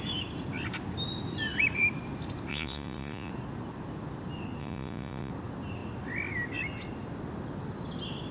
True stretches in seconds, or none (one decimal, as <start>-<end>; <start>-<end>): 0.0-2.5; 3.3-4.6; 5.3-8.3